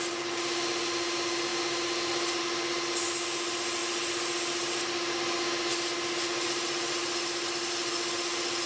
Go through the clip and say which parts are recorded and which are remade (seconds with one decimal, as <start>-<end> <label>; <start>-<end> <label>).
0.0-8.7 recorded